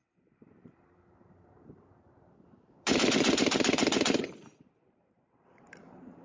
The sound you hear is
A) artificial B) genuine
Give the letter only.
A